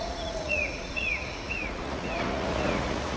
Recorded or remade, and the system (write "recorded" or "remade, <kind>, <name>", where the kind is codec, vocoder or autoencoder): remade, vocoder, Vocos